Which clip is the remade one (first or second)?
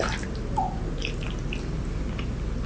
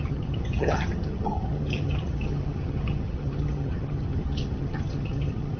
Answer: second